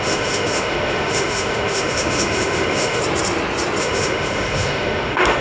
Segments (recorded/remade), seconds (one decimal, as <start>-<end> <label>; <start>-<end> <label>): 0.0-3.0 remade; 3.0-3.8 recorded; 3.8-5.4 remade